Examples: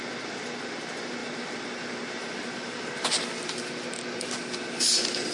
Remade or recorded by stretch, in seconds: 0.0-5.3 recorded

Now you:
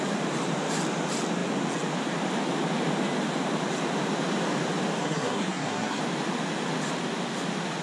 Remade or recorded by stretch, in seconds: 0.0-5.0 recorded; 5.0-6.0 remade; 6.0-7.8 recorded

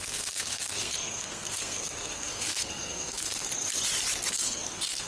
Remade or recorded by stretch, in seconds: 0.0-3.5 remade; 3.5-4.3 recorded; 4.3-5.1 remade

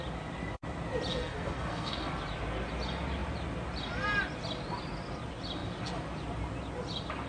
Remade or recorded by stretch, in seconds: 0.0-1.1 recorded; 1.1-2.1 remade; 2.1-7.3 recorded

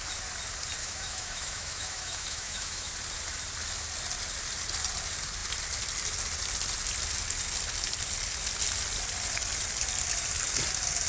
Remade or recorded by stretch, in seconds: 0.0-0.8 recorded; 0.8-2.9 remade; 2.9-11.1 recorded

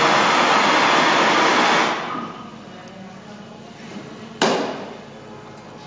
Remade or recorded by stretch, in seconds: 0.0-5.9 recorded